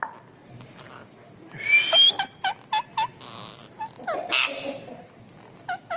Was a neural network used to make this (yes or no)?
no